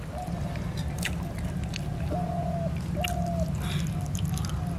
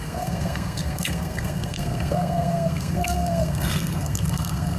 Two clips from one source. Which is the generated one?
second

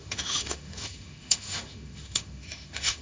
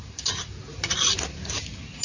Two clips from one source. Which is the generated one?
first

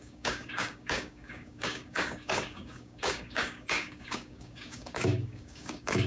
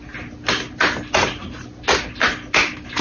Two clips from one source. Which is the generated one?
first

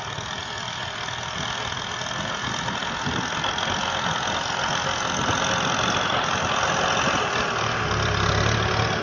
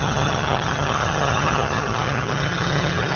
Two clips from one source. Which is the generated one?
second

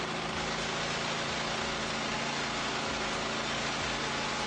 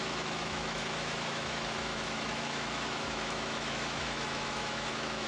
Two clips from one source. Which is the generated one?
second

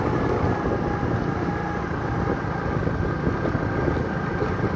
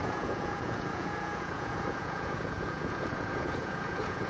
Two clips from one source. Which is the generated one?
second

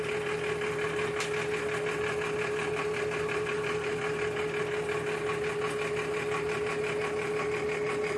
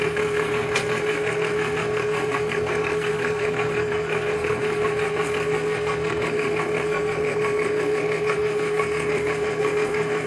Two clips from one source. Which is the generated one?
second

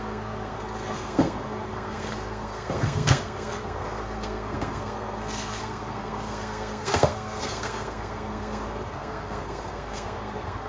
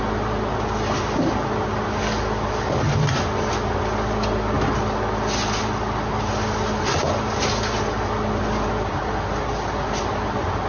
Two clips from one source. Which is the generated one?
first